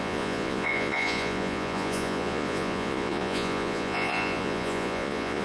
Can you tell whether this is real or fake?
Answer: fake